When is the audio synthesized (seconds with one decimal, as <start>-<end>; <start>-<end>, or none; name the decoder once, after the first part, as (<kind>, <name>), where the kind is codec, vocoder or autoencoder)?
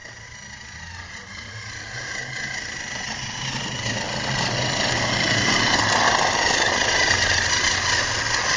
none